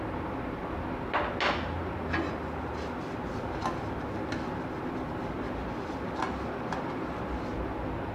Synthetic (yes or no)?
no